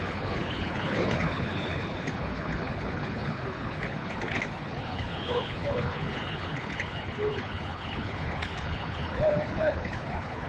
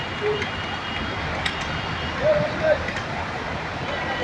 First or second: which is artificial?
first